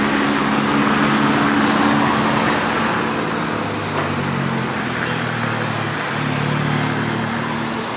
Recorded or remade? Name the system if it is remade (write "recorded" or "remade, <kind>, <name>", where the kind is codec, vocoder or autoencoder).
recorded